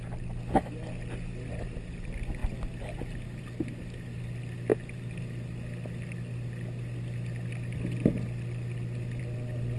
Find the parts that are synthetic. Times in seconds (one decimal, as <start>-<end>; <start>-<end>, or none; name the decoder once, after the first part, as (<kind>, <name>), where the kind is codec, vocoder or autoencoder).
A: none